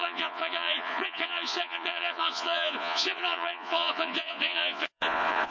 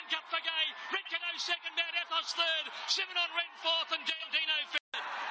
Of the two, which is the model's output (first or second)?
first